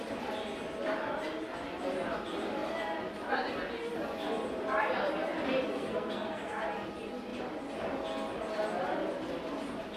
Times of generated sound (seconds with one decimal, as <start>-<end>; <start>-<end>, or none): 5.7-6.6